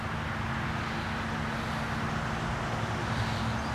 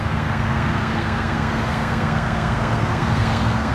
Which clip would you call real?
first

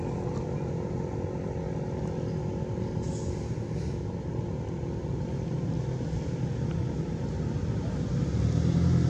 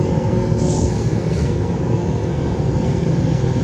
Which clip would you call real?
first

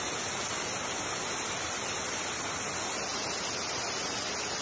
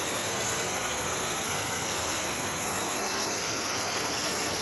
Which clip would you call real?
first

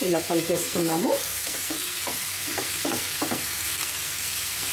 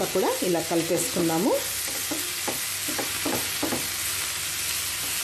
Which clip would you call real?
second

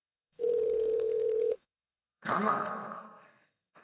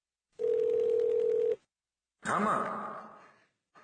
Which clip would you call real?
second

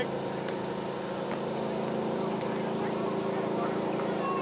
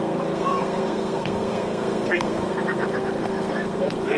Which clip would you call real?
first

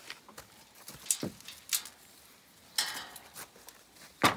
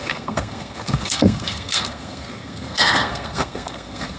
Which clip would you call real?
first